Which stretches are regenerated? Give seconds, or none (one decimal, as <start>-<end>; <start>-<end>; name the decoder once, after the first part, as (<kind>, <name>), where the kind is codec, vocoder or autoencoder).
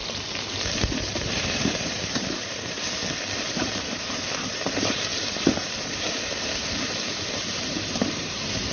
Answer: 0.0-3.0 (vocoder, BigVGAN v2); 3.5-8.7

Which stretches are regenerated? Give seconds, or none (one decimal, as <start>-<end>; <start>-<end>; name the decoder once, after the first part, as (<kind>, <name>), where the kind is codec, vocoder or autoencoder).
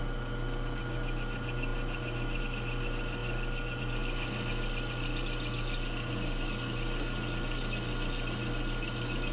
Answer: none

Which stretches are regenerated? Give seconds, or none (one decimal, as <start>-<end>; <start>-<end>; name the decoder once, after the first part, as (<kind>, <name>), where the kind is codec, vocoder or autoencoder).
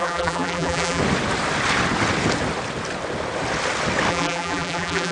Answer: 0.0-1.0 (vocoder, BigVGAN v2); 4.1-5.1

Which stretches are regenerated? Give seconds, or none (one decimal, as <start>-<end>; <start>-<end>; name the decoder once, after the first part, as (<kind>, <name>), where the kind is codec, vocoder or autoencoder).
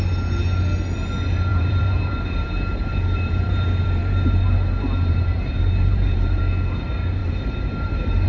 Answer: 1.5-6.4 (vocoder, BigVGAN v2); 7.2-8.3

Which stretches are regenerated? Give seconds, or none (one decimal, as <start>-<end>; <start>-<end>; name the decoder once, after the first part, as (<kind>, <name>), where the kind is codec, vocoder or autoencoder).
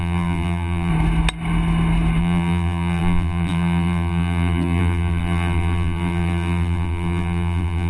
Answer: 0.0-0.9 (vocoder, BigVGAN v2); 2.2-7.9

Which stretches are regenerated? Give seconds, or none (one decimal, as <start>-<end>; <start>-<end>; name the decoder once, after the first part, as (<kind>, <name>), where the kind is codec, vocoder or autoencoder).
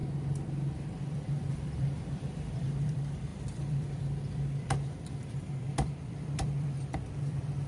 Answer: 1.0-7.7 (vocoder, BigVGAN v2)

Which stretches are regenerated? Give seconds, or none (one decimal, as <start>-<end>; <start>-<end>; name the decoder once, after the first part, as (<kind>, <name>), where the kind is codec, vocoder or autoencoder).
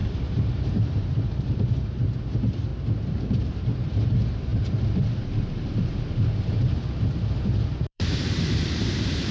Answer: 0.0-2.7 (vocoder, BigVGAN v2); 3.5-9.3